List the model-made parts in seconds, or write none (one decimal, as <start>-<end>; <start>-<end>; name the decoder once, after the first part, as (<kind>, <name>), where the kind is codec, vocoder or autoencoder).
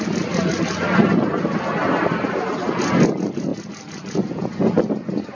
1.8-2.5 (vocoder, BigVGAN v2)